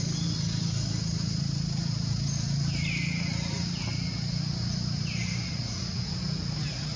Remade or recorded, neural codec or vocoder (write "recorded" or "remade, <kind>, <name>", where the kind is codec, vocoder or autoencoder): recorded